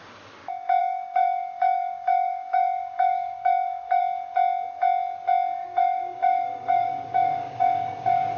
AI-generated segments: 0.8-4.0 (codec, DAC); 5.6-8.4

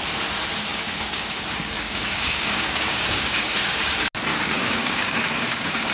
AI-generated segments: 0.7-3.9 (codec, DAC); 4.3-5.9